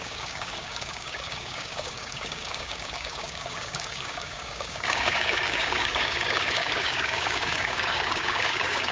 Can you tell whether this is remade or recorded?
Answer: remade